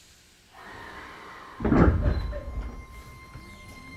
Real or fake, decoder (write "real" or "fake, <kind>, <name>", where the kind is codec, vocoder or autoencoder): real